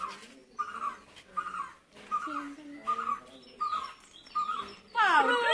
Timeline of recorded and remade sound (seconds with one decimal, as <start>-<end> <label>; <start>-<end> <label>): 0.0-5.5 recorded